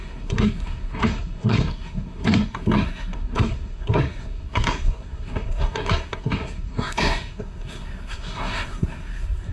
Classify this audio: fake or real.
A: fake